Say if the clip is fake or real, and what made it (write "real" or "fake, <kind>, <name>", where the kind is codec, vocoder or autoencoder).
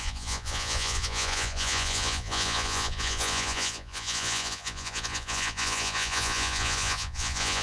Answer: fake, vocoder, Vocos